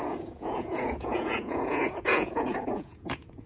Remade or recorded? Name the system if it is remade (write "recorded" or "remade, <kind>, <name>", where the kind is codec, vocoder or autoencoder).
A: remade, vocoder, Vocos